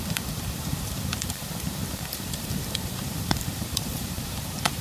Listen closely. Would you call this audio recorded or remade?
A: remade